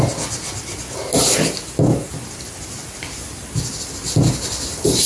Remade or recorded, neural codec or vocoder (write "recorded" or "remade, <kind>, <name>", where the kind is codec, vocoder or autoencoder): recorded